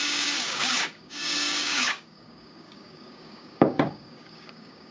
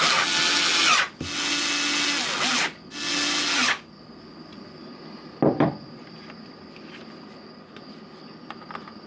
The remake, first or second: first